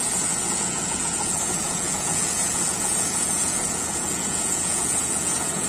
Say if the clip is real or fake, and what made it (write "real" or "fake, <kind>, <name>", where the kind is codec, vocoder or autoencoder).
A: fake, vocoder, Vocos